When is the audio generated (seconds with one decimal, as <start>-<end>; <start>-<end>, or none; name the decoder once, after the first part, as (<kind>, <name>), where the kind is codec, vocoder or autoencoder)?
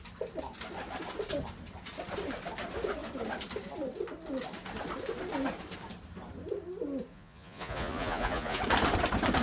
7.1-8.6 (vocoder, Vocos)